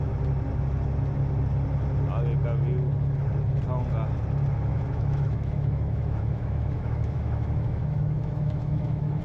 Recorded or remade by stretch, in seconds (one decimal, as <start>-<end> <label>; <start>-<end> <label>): 0.0-4.7 recorded; 4.7-9.2 remade